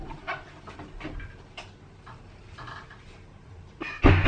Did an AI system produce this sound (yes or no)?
no